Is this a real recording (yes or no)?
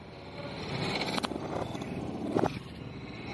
yes